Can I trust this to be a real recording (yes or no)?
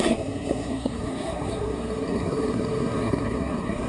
no